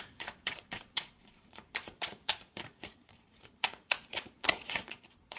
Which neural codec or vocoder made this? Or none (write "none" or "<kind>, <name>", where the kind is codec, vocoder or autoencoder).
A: vocoder, Vocos